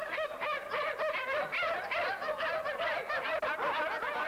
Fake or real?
real